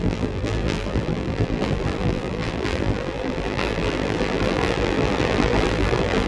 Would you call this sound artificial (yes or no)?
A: yes